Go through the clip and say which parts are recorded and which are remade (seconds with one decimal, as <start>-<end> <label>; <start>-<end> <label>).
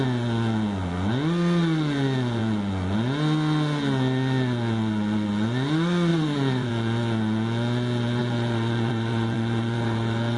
0.0-6.1 recorded; 6.1-6.7 remade; 6.7-8.2 recorded; 8.2-10.4 remade